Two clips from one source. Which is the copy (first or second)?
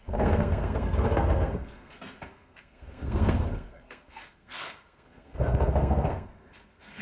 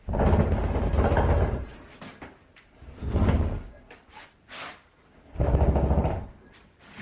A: first